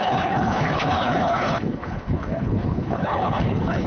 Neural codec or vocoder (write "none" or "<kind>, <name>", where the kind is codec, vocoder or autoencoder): codec, HILCodec